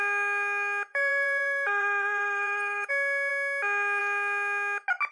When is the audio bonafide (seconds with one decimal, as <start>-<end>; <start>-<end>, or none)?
0.0-0.9; 2.9-5.1